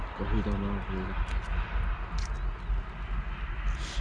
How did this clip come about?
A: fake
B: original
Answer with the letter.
B